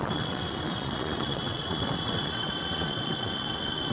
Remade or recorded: remade